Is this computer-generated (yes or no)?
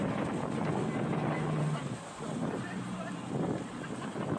no